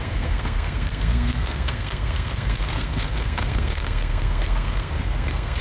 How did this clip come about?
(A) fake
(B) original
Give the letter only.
A